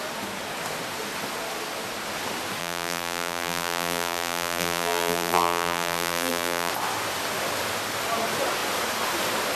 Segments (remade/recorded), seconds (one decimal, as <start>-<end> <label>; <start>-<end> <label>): 0.0-2.6 recorded; 2.6-6.7 remade; 6.7-9.6 recorded

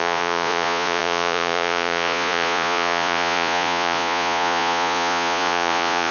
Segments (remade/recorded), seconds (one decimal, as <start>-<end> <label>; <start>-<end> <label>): 0.0-6.1 remade

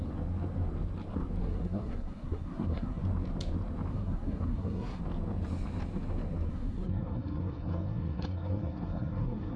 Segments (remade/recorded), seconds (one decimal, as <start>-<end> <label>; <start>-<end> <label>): 0.0-1.4 recorded; 1.4-3.0 remade; 3.0-3.9 recorded; 3.9-5.0 remade; 5.0-6.5 recorded; 6.5-9.6 remade

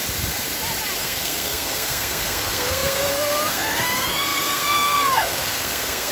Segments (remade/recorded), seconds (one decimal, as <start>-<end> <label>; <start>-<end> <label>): 0.0-1.0 recorded; 1.0-6.1 remade

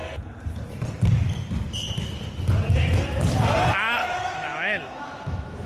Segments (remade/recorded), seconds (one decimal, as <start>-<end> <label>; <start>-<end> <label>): 0.0-4.0 recorded; 4.0-5.7 remade

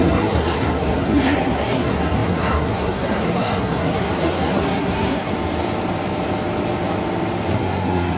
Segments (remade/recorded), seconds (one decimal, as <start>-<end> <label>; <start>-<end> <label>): 0.0-5.3 remade; 5.3-7.5 recorded; 7.5-8.2 remade